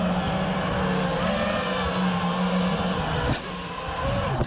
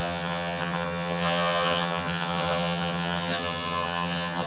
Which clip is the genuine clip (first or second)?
first